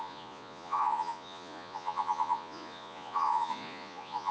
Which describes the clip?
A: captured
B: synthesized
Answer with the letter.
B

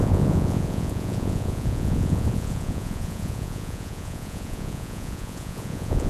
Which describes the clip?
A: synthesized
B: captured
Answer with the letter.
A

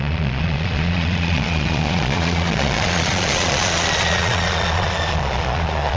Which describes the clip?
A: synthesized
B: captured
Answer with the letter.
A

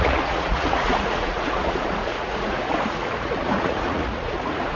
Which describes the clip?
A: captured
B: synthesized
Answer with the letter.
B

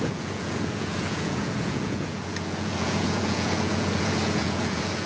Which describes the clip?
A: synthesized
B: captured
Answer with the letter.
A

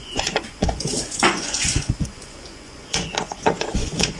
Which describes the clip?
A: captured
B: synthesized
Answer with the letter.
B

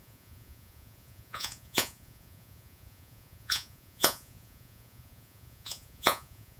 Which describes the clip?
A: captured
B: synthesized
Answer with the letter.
B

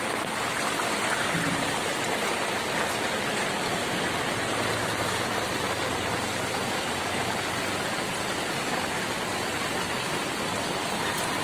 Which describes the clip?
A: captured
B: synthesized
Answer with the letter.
A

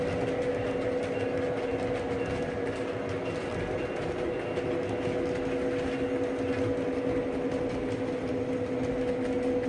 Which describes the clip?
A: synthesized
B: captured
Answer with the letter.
B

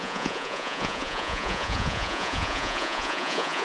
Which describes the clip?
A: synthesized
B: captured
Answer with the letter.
A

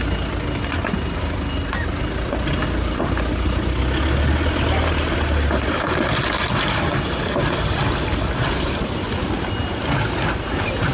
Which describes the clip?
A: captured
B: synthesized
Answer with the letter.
A